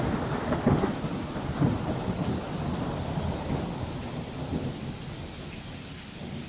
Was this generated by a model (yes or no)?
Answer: no